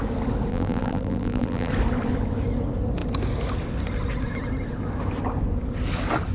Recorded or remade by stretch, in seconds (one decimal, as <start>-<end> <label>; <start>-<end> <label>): 0.0-0.5 recorded; 0.5-1.7 remade; 1.7-6.3 recorded